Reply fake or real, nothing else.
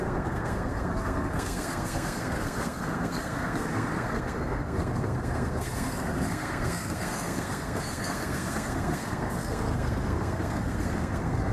fake